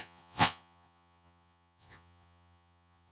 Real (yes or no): no